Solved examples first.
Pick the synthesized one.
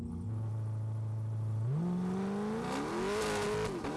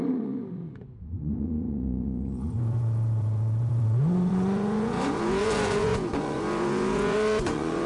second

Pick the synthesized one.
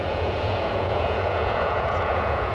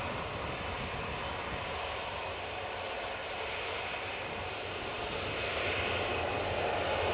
first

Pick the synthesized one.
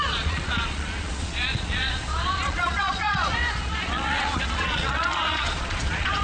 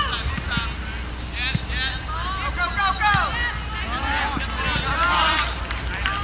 first